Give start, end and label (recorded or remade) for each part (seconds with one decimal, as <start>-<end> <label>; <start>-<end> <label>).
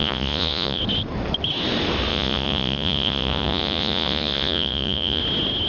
0.0-0.8 remade; 0.8-2.1 recorded; 2.1-5.2 remade; 5.2-5.7 recorded